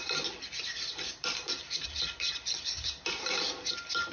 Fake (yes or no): no